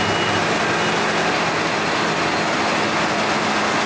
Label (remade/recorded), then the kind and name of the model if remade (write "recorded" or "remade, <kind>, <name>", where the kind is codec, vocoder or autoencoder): recorded